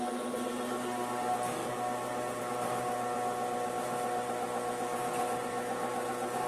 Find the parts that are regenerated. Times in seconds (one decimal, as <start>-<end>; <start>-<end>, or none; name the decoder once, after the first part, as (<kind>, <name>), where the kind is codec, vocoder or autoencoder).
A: 1.6-2.4 (vocoder, BigVGAN v2)